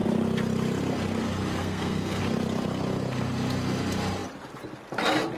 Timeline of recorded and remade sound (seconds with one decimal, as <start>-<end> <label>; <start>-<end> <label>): 0.0-1.6 recorded; 1.6-2.2 remade; 2.2-5.4 recorded